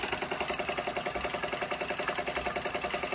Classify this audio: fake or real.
real